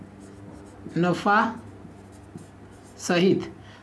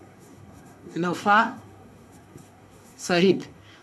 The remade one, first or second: second